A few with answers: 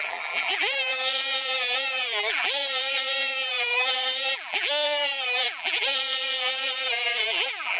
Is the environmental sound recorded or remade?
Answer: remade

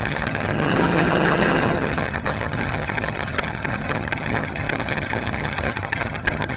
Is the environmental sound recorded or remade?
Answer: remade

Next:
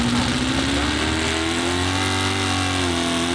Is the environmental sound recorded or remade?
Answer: recorded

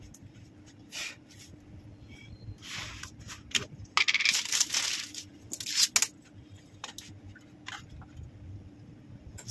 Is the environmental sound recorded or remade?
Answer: recorded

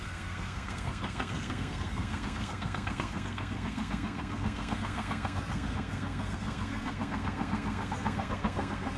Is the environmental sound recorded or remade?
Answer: remade